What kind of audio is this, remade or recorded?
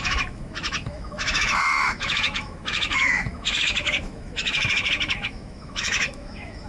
remade